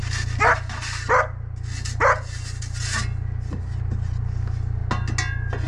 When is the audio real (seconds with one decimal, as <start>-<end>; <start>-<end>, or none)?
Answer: 0.0-5.7